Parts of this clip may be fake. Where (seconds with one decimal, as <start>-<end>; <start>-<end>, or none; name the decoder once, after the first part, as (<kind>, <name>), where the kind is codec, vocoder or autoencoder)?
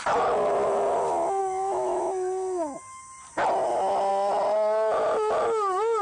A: 1.4-3.0 (autoencoder, DAC-VAE)